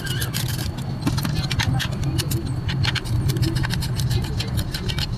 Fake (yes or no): no